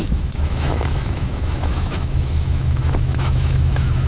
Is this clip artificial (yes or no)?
yes